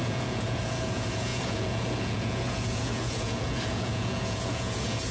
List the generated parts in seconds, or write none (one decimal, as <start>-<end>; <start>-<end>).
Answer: 0.0-5.1